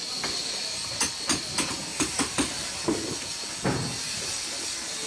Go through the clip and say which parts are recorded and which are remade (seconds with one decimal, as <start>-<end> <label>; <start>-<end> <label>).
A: 0.0-5.1 recorded